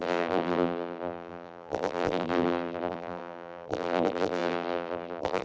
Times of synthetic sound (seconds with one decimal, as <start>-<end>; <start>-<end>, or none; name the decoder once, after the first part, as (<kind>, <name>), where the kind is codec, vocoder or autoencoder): 0.0-5.4 (vocoder, BigVGAN v2)